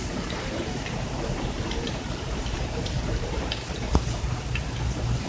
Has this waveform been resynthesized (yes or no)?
yes